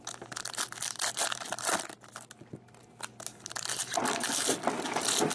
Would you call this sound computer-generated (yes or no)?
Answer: no